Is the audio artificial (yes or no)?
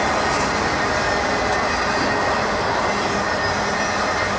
no